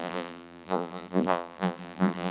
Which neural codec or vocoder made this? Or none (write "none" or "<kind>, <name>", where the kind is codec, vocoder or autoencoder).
vocoder, BigVGAN v2